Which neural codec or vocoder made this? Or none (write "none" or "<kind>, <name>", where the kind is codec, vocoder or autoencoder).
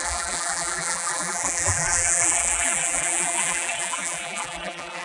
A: vocoder, BigVGAN v2